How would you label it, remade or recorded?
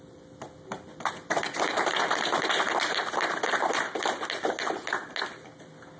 recorded